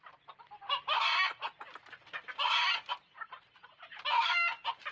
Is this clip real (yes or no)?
no